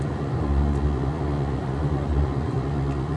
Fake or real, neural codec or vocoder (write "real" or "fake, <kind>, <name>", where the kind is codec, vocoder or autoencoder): fake, vocoder, Vocos